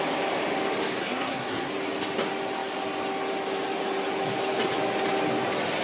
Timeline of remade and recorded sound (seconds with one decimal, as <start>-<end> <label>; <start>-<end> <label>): 0.0-1.0 recorded; 1.0-1.7 remade; 1.7-5.8 recorded